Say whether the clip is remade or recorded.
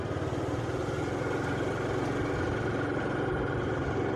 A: recorded